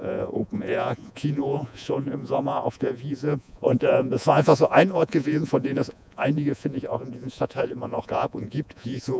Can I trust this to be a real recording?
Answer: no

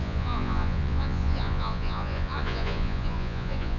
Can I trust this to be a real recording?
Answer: no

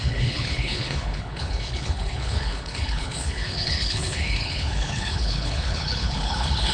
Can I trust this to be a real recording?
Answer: no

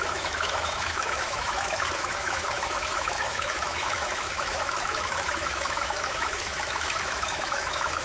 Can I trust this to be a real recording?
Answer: no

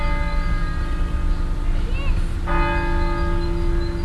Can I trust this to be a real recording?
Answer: yes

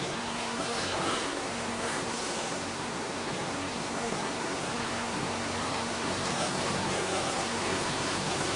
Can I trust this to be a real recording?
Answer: no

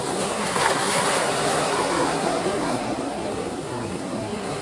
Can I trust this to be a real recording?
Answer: no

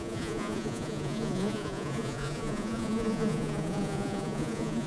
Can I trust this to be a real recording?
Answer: no